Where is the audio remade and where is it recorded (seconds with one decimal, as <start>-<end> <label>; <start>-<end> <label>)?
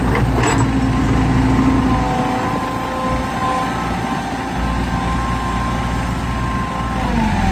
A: 0.0-7.5 recorded